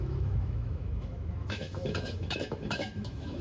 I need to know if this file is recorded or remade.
remade